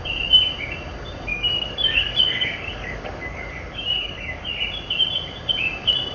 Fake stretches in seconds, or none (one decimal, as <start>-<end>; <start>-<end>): 1.3-4.6